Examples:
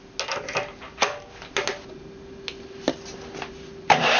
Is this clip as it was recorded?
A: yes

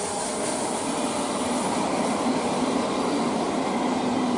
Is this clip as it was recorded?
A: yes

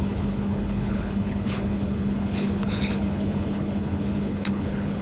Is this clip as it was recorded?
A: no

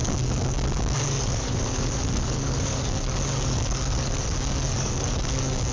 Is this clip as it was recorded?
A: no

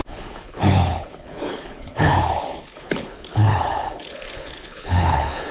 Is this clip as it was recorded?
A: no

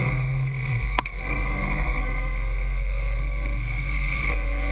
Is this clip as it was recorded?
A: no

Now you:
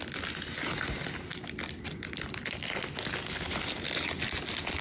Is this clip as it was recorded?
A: yes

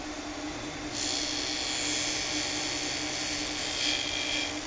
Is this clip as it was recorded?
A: yes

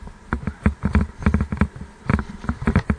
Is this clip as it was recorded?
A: yes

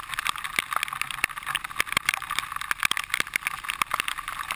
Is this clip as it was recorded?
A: yes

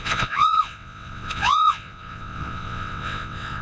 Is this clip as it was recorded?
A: no